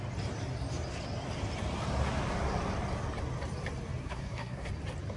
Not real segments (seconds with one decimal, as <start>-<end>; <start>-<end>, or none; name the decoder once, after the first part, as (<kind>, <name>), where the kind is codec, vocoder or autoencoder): 4.0-4.7 (codec, SNAC)